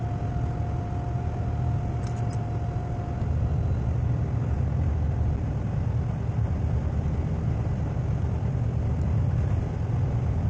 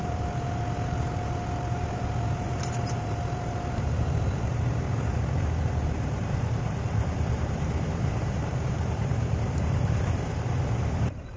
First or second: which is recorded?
first